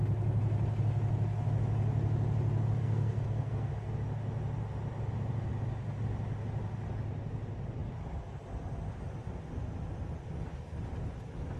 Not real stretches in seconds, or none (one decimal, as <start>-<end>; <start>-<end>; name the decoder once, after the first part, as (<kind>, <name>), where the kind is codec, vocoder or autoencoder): 2.8-3.7 (codec, SNAC)